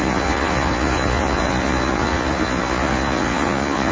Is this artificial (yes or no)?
yes